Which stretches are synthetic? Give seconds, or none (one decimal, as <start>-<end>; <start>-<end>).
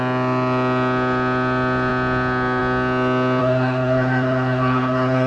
3.4-5.3